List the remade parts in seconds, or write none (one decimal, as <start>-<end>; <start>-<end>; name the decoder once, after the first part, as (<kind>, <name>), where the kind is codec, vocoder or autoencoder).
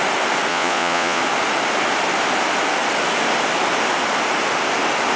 0.5-1.2 (vocoder, Vocos)